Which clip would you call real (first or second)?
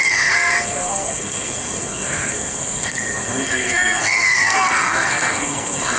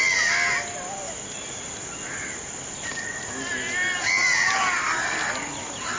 second